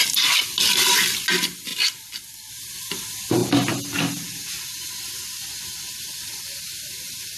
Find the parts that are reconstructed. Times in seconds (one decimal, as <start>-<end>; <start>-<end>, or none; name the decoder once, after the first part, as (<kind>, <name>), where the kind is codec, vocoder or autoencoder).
none